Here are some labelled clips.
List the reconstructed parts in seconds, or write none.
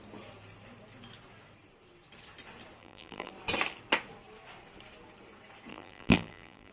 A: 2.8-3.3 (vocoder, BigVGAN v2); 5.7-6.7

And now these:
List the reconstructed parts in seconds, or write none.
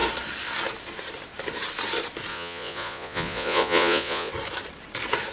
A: 2.3-4.3 (vocoder, Vocos)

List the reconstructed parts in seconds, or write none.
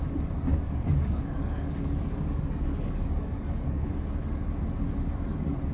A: 0.5-3.9 (codec, DAC)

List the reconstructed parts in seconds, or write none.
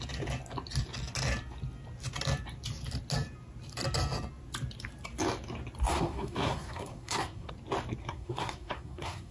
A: 5.9-7.5 (codec, SNAC); 8.0-9.3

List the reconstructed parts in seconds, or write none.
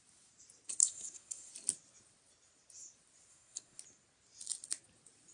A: 0.8-1.5 (codec, SNAC); 3.3-3.8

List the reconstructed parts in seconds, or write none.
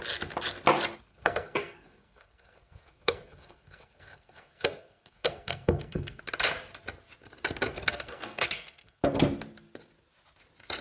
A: 1.1-6.2 (codec, SNAC); 7.7-9.0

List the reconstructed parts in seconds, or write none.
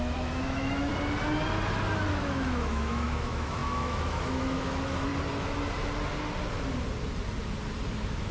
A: 0.0-0.9 (autoencoder, DAC-VAE); 2.1-5.1; 7.9-8.3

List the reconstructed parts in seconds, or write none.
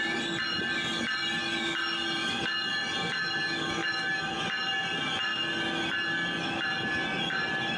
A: none